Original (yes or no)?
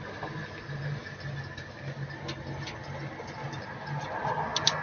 yes